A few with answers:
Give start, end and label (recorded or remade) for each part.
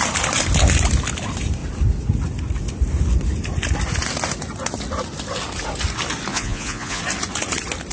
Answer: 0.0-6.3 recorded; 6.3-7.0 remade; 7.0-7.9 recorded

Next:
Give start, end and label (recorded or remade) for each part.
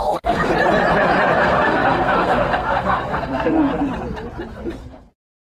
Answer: 0.0-0.5 remade; 0.5-1.4 recorded; 1.4-3.7 remade; 3.7-4.8 recorded; 4.8-5.4 remade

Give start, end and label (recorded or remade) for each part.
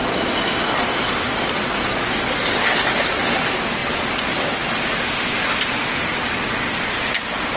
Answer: 0.0-1.9 recorded; 1.9-2.6 remade; 2.6-7.6 recorded